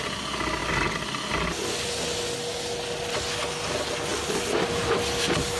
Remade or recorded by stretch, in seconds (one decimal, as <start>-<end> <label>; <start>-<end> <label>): 0.0-5.6 recorded